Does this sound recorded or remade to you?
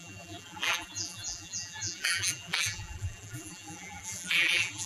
remade